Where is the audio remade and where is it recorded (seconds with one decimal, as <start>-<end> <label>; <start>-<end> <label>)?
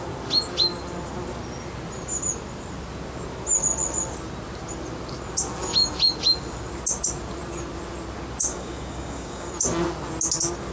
0.0-8.5 recorded; 8.5-9.5 remade; 9.5-10.7 recorded